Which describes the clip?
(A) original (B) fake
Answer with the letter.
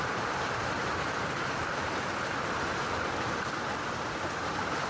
B